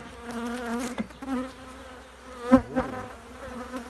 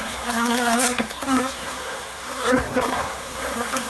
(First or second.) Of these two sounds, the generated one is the second